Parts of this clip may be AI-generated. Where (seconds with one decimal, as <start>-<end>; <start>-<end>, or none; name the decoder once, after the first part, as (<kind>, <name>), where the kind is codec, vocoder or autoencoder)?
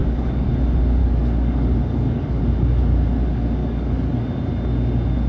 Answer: 0.0-0.5 (codec, DAC); 1.0-2.4; 3.6-4.2